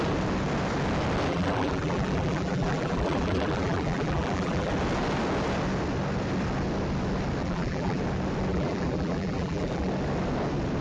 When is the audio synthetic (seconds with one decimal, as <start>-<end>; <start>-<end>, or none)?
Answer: 1.3-4.7; 7.4-8.0; 8.5-9.9